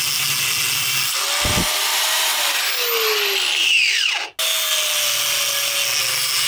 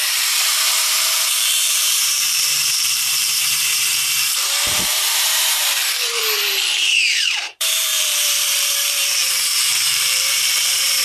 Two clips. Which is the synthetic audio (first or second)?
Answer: second